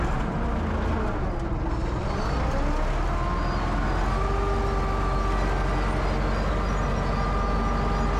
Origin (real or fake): real